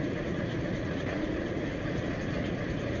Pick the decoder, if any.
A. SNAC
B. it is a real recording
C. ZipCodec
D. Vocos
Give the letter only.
D